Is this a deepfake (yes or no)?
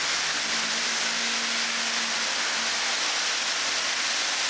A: no